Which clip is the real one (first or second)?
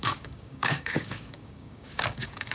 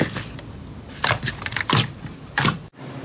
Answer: second